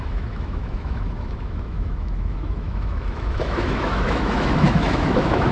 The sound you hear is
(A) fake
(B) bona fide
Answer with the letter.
A